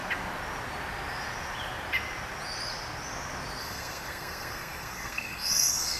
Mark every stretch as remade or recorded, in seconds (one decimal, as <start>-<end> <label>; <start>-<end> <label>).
0.0-3.6 recorded; 3.6-6.0 remade